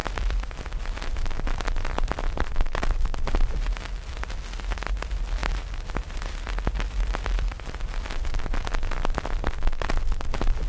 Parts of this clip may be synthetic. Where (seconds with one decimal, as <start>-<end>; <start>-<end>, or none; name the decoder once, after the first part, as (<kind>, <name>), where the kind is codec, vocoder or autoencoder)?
0.0-3.9 (vocoder, BigVGAN v2); 5.4-8.4